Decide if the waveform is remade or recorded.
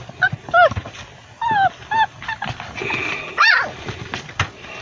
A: recorded